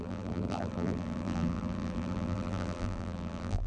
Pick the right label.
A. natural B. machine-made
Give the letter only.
B